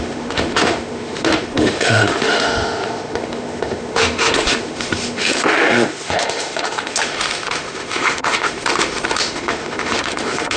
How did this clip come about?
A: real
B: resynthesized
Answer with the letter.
B